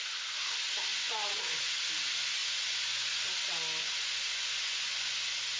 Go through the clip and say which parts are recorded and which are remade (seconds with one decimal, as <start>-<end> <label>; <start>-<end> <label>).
0.0-0.9 recorded; 0.9-1.7 remade; 1.7-2.4 recorded; 2.4-3.2 remade; 3.2-3.8 recorded; 3.8-5.1 remade; 5.1-5.6 recorded